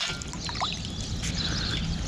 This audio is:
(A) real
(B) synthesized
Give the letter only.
A